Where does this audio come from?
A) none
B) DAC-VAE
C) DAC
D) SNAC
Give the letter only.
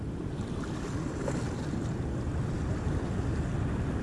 A